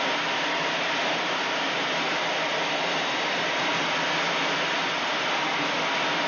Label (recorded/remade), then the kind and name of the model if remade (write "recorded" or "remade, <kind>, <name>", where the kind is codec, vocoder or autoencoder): recorded